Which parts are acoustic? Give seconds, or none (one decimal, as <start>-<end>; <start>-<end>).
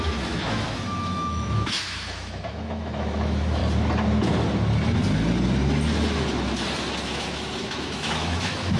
3.6-7.0